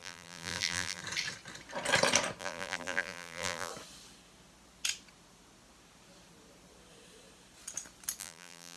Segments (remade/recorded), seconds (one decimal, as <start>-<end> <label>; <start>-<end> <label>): 0.0-1.0 remade; 1.0-2.4 recorded; 2.4-3.7 remade; 3.7-8.2 recorded; 8.2-8.8 remade

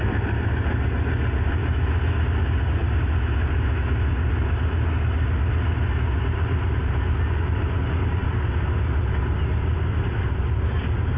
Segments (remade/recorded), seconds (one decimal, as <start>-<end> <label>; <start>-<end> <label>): 0.0-1.6 recorded; 1.6-2.2 remade; 2.2-11.2 recorded